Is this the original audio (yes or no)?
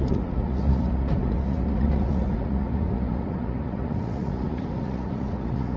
no